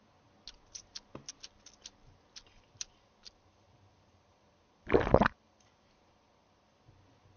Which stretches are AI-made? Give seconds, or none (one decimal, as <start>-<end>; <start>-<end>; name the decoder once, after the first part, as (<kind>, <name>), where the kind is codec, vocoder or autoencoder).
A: 3.9-6.1 (vocoder, BigVGAN v2)